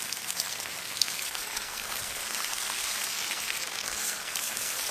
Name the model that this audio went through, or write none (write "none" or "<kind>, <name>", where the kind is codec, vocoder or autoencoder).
codec, SNAC